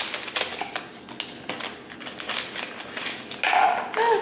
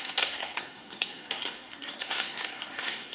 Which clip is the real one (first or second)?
first